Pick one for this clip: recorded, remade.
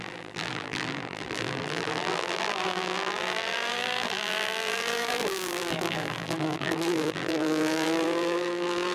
remade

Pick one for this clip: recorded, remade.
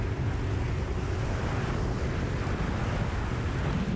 recorded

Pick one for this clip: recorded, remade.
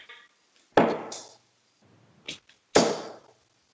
recorded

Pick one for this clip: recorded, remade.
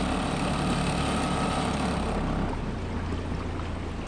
recorded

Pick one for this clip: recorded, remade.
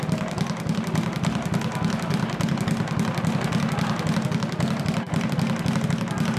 recorded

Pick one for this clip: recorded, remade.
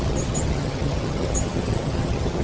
remade